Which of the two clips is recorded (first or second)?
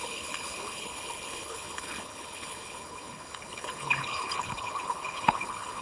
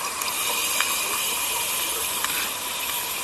second